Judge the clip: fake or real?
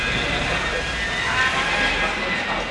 real